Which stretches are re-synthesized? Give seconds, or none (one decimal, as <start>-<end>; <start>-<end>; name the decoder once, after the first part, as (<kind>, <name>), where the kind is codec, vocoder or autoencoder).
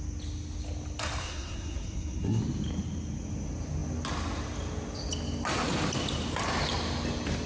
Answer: 1.2-2.4 (codec, SNAC)